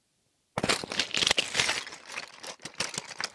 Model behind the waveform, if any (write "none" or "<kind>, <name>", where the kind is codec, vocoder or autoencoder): none